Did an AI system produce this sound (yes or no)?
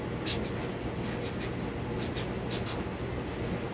no